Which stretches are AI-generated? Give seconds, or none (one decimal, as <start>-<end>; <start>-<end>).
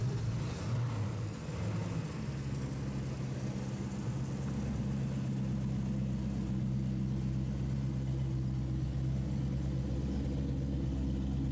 none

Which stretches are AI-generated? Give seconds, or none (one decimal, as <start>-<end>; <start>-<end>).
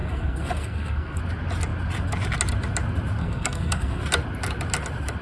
0.0-1.2; 3.2-4.0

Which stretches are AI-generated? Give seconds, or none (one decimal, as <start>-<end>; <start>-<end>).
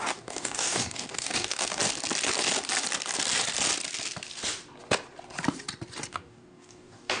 0.0-1.8; 6.1-7.2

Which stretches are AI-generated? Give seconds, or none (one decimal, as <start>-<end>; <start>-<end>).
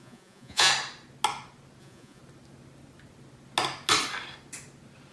0.0-0.7; 1.8-2.2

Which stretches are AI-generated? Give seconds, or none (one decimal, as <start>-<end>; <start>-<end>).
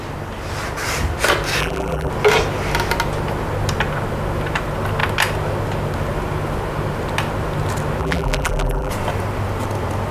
1.6-2.1; 8.0-8.9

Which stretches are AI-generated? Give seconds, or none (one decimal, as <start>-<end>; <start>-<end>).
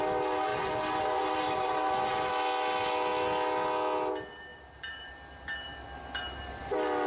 0.5-2.3; 4.5-5.1